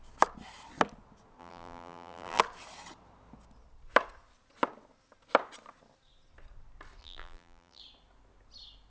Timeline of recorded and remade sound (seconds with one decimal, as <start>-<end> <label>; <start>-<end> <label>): 0.0-1.4 recorded; 1.4-2.4 remade; 2.4-7.0 recorded; 7.0-7.8 remade; 7.8-8.9 recorded

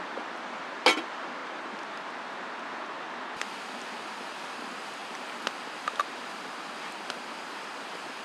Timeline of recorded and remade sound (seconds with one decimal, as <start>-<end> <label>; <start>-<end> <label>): 0.0-8.2 recorded